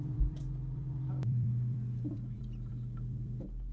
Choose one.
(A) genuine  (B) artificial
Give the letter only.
B